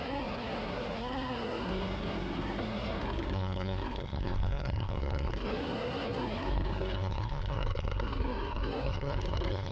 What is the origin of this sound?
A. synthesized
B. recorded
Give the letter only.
A